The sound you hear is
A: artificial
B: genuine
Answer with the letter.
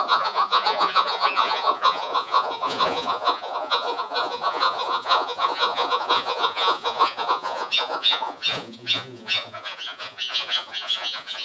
A